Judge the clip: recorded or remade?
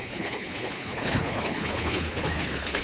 remade